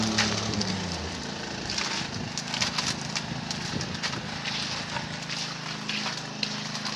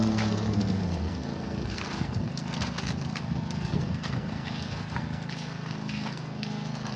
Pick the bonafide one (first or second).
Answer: first